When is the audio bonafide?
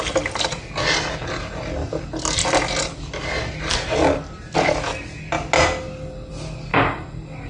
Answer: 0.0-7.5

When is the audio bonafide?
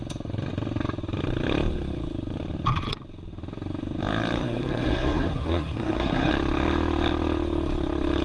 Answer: 0.0-4.4; 6.3-8.2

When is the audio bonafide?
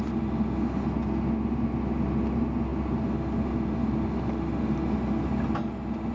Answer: 0.0-6.1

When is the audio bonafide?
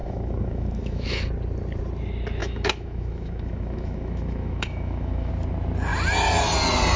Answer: 1.2-2.4; 5.3-7.0